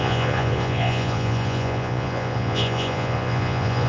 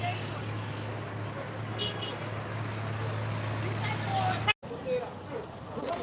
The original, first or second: second